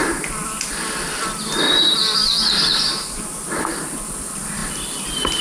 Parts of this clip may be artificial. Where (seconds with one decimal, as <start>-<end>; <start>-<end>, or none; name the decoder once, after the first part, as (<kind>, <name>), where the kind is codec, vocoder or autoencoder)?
none

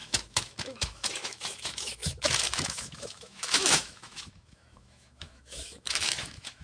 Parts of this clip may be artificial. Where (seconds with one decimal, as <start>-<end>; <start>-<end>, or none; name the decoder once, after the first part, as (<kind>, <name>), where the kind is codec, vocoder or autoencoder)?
0.0-6.6 (autoencoder, DAC-VAE)

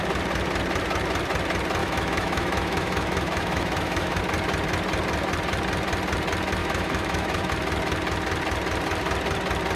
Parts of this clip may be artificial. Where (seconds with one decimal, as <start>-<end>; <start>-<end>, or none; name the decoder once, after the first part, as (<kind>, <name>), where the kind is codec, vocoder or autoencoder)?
1.8-4.2 (autoencoder, DAC-VAE); 6.6-7.5

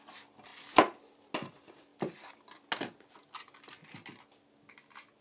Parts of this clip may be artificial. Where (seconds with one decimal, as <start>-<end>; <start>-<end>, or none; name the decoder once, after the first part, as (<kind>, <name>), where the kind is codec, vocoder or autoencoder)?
none

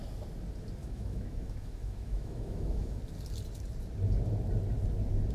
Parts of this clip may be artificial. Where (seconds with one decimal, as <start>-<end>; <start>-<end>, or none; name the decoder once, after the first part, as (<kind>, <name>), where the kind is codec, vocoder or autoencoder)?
0.8-3.0 (autoencoder, DAC-VAE)

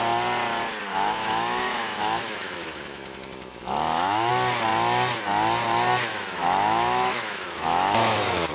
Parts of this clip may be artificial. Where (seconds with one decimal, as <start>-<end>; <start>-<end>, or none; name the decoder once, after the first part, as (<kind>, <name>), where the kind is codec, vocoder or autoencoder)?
0.9-4.3 (autoencoder, DAC-VAE); 6.1-8.5